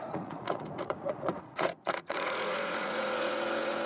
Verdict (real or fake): fake